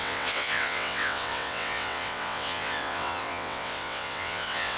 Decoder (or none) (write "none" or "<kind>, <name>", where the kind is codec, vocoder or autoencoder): vocoder, WaveNeXt